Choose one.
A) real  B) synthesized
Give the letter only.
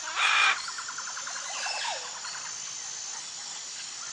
A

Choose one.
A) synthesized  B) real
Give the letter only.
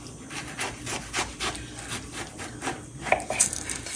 B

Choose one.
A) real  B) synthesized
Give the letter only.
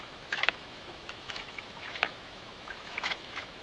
B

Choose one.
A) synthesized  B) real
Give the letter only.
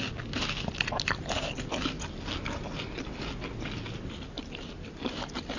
B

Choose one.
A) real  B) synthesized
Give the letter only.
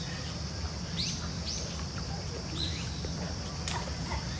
A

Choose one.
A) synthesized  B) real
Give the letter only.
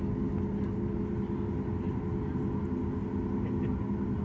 B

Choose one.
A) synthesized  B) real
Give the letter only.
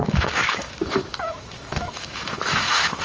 A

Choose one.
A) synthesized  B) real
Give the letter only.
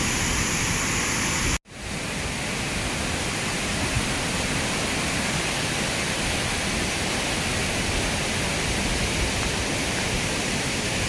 B